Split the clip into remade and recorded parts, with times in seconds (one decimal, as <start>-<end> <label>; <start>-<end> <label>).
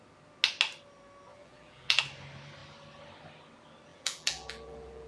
0.0-1.3 recorded; 1.3-2.0 remade; 2.0-3.9 recorded; 3.9-5.1 remade